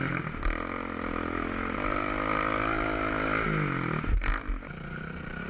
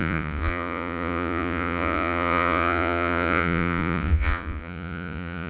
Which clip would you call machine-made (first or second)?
second